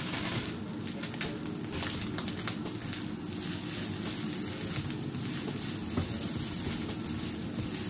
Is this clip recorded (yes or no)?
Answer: yes